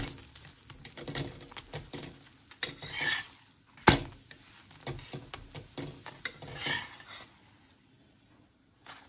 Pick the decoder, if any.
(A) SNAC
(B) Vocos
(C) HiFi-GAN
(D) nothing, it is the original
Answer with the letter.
D